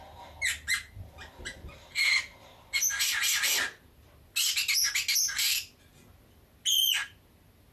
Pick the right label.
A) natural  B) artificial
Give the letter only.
A